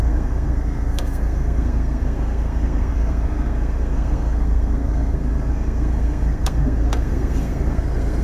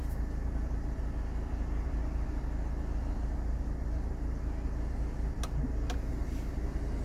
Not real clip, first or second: first